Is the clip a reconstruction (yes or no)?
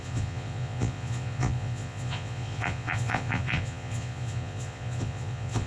yes